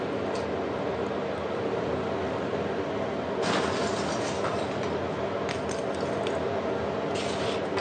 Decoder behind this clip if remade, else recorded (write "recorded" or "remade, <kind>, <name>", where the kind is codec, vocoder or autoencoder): recorded